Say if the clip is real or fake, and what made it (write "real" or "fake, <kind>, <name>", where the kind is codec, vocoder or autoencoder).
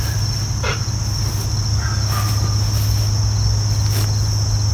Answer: real